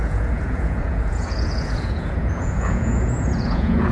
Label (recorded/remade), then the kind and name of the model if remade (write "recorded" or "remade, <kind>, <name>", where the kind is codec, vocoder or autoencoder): remade, vocoder, Vocos